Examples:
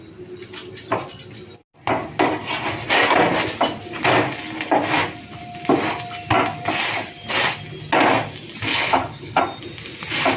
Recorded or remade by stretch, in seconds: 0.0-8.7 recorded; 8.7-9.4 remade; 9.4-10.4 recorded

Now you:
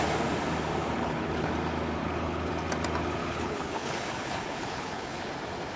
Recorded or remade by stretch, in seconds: 0.0-0.8 recorded; 0.8-1.5 remade; 1.5-2.0 recorded; 2.0-2.5 remade; 2.5-3.2 recorded; 3.2-5.3 remade; 5.3-5.8 recorded

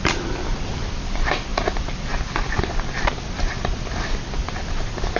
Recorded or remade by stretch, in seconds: 0.0-5.2 recorded